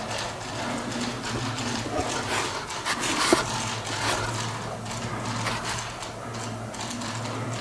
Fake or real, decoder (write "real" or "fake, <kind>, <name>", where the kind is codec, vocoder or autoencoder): real